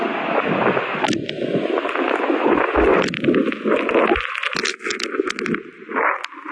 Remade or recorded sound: recorded